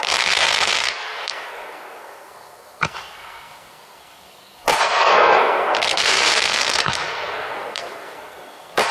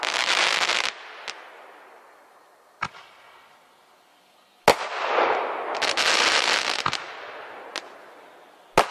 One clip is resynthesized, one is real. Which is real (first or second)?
second